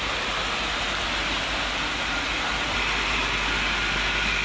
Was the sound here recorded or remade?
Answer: recorded